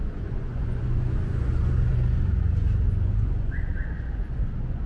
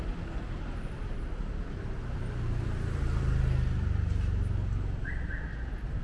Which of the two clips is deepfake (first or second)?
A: first